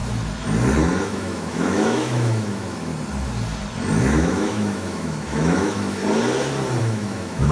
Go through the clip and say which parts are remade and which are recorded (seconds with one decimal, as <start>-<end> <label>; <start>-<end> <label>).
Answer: 0.0-1.0 recorded; 1.0-2.9 remade; 2.9-4.0 recorded; 4.0-6.0 remade; 6.0-6.8 recorded; 6.8-7.5 remade